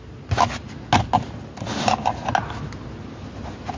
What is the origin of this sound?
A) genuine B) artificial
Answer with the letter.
A